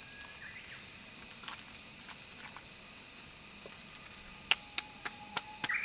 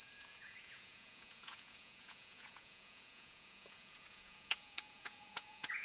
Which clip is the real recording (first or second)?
first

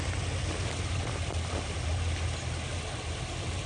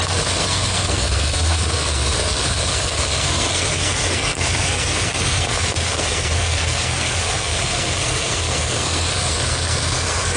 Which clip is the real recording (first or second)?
first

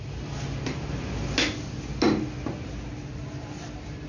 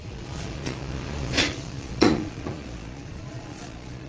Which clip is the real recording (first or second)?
first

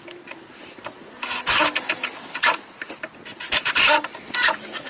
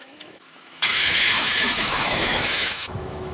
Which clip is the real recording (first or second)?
first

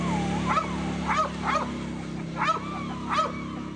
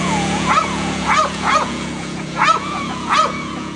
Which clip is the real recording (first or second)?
first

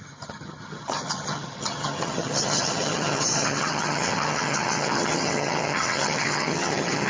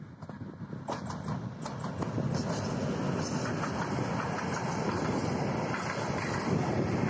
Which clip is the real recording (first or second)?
second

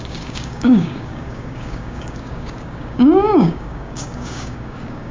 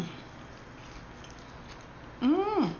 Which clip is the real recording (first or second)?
second